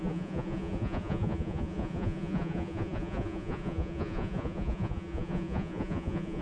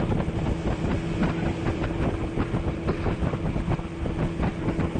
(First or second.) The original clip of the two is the second